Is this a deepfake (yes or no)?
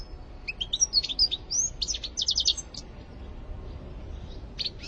no